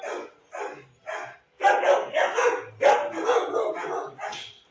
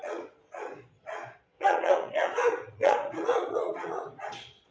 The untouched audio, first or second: first